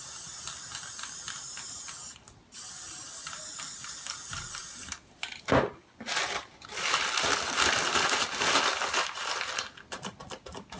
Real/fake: real